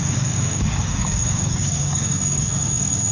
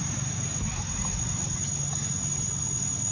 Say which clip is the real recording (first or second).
second